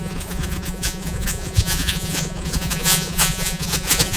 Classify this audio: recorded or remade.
remade